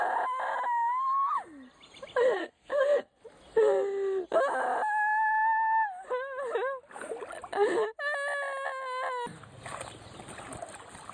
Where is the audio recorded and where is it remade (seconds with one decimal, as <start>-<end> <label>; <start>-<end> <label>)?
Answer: 0.0-2.4 recorded; 2.4-3.0 remade; 3.0-11.1 recorded